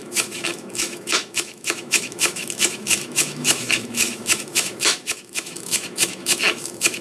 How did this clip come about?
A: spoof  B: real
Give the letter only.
A